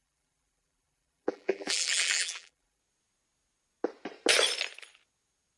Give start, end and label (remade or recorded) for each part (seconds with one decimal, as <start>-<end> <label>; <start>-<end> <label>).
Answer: 0.0-2.8 remade; 2.8-5.6 recorded